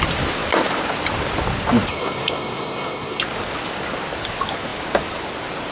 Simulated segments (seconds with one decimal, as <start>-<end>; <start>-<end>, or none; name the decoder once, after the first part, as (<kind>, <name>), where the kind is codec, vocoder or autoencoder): 1.9-3.2 (codec, SNAC)